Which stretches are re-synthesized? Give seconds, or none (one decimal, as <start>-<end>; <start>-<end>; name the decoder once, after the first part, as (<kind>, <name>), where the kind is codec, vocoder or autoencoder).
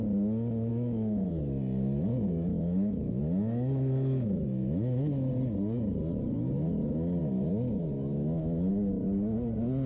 0.7-1.6 (autoencoder, DAC-VAE); 2.1-5.3; 7.2-8.7